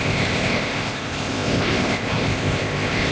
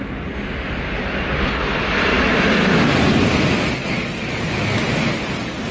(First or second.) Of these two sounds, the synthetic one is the first